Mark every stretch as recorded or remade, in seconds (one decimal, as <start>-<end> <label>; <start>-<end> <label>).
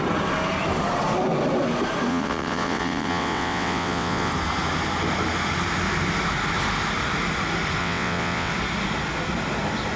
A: 0.0-2.1 recorded; 2.1-4.3 remade; 4.3-7.8 recorded; 7.8-8.5 remade; 8.5-10.0 recorded